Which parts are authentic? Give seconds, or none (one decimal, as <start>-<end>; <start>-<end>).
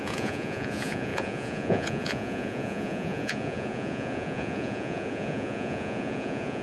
none